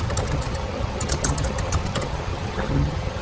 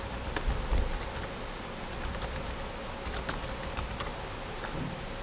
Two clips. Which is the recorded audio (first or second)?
second